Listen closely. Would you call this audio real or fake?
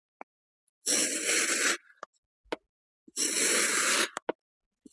real